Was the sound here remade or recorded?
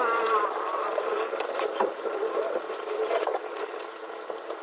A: remade